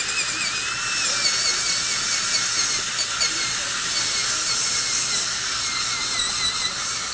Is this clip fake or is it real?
real